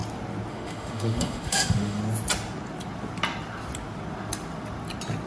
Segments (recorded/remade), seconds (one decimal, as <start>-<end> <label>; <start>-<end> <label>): 0.0-0.5 recorded; 0.5-2.0 remade; 2.0-5.3 recorded